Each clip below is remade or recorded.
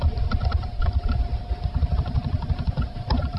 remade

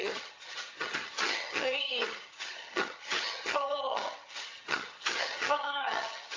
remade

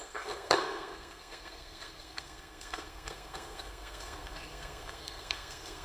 remade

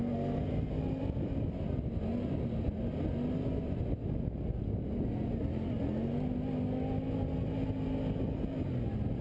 recorded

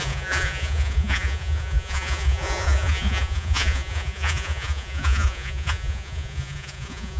remade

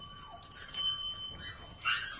remade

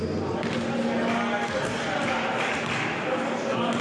recorded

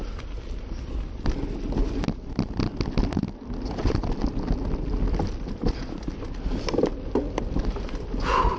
recorded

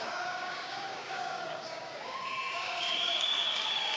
remade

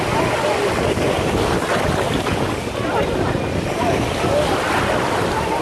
recorded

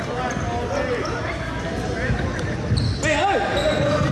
recorded